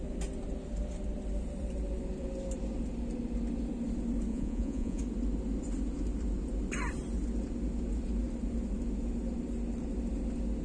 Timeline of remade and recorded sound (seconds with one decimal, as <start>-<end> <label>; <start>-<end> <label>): 0.0-4.3 recorded; 4.3-5.0 remade; 5.0-10.6 recorded